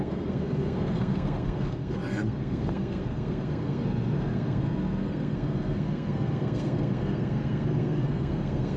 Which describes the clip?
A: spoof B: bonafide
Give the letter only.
A